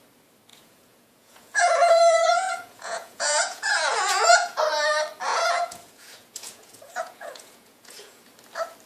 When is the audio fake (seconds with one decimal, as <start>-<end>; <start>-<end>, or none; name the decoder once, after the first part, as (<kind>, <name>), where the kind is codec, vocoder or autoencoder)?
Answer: 0.5-4.6 (vocoder, Vocos); 5.3-8.2